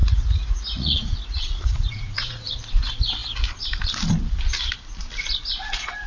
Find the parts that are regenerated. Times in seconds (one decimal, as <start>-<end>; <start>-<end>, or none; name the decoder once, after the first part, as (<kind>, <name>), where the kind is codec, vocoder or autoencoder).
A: 0.0-2.6 (vocoder, Vocos)